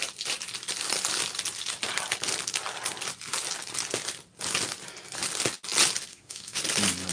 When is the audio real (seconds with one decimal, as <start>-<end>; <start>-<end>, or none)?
0.0-6.1; 6.6-7.1